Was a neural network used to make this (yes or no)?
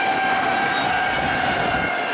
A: no